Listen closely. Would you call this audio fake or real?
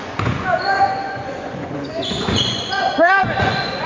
fake